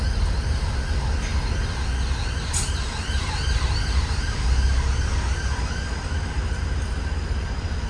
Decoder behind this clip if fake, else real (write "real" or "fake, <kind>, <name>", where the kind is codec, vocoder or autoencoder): real